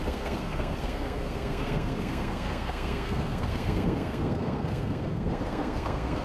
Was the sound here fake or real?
fake